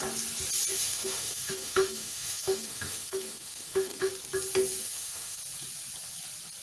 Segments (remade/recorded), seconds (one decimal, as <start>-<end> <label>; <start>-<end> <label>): 0.0-0.7 recorded; 0.7-4.1 remade; 4.1-4.8 recorded; 4.8-5.4 remade; 5.4-6.6 recorded